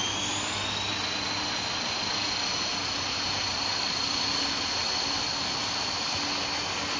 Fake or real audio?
real